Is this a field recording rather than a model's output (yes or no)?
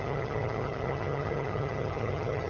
no